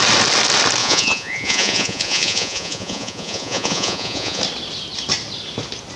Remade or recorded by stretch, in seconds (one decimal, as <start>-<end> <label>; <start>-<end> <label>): 0.0-0.8 recorded; 0.8-4.4 remade; 4.4-6.0 recorded